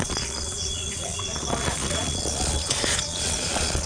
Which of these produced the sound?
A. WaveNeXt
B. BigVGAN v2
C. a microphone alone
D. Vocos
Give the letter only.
D